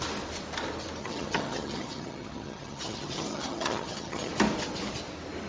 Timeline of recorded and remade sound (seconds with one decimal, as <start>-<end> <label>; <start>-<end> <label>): 0.0-1.0 recorded; 1.0-4.3 remade; 4.3-5.5 recorded